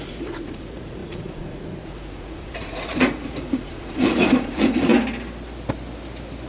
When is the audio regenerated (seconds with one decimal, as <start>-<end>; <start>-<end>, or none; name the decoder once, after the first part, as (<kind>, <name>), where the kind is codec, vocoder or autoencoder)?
0.0-4.9 (vocoder, Vocos)